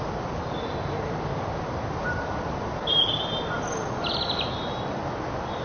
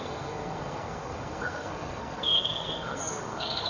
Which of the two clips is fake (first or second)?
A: second